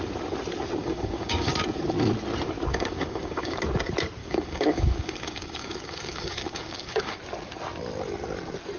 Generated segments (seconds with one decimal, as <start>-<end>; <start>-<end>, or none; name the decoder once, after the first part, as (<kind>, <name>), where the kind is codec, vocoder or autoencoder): 0.8-1.5 (codec, DAC); 2.7-3.6; 4.2-7.2